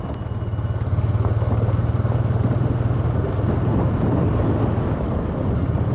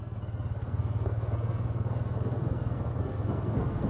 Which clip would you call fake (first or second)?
second